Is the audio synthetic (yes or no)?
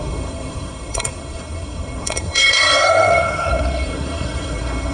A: yes